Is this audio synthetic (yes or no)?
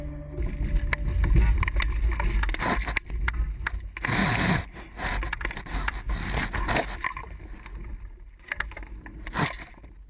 no